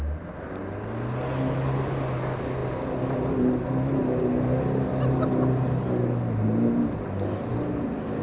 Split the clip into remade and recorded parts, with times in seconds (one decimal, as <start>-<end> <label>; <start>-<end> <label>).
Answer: 0.0-8.2 recorded